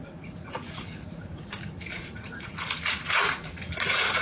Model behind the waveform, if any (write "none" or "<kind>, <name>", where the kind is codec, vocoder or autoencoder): vocoder, Vocos